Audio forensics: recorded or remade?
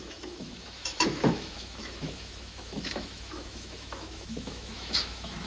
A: remade